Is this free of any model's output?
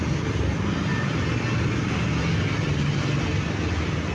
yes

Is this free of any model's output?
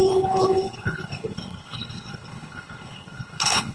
no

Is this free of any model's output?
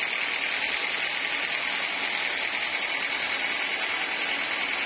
yes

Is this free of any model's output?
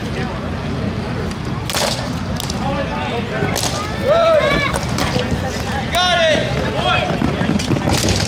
yes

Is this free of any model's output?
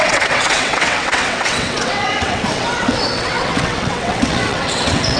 no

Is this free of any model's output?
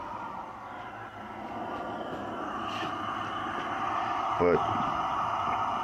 no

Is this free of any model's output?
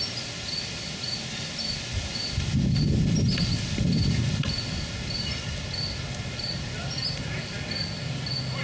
yes